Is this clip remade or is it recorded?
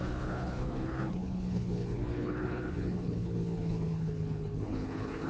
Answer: remade